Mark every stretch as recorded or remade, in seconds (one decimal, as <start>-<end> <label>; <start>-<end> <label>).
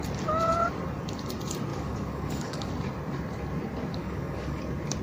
0.0-1.7 recorded; 1.7-2.7 remade; 2.7-3.9 recorded; 3.9-4.6 remade; 4.6-5.0 recorded